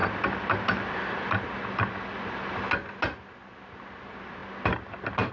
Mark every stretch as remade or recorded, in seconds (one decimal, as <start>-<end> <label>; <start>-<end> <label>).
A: 0.0-5.3 recorded